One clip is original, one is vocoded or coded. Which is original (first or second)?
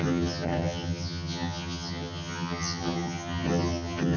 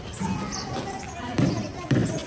second